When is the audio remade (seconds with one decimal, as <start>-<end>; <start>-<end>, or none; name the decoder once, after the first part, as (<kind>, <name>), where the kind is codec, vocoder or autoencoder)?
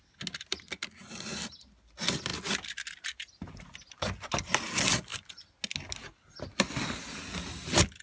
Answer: none